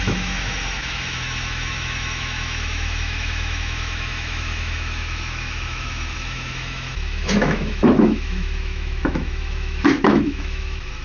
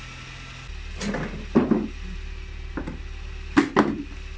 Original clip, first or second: second